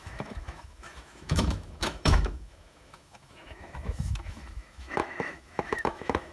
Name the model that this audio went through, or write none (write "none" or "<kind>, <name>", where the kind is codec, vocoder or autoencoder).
autoencoder, DAC-VAE